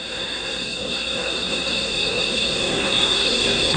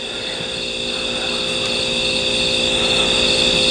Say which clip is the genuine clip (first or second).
second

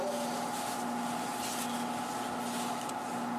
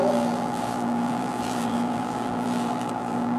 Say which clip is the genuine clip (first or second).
first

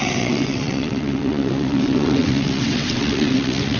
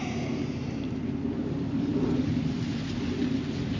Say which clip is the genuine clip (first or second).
second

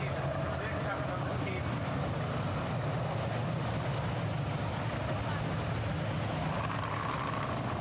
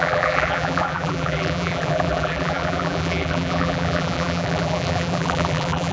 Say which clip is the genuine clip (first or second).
first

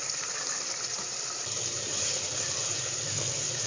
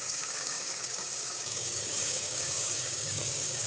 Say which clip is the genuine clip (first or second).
first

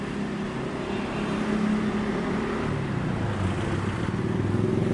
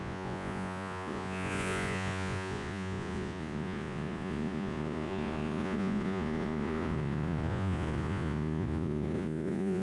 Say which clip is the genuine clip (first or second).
first